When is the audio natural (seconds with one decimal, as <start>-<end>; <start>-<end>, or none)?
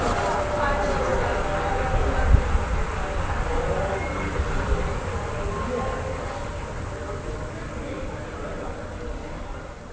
0.0-9.9